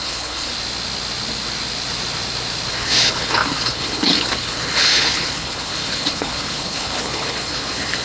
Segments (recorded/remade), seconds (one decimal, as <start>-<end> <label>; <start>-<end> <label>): 0.0-0.5 remade; 0.5-2.7 recorded; 2.7-8.0 remade